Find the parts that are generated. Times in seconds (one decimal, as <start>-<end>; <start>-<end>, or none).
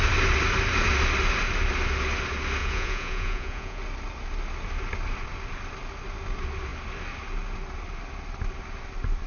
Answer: 2.6-3.8